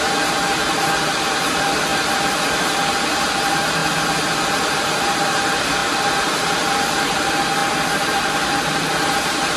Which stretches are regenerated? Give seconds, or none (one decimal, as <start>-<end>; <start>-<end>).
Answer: 0.0-3.8; 4.3-7.6; 8.2-9.6